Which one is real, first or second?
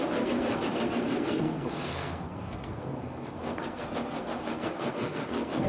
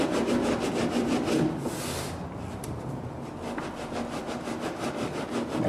second